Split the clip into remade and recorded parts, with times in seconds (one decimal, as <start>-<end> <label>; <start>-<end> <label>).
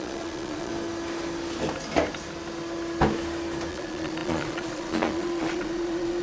0.0-0.7 remade; 0.7-3.7 recorded; 3.7-6.2 remade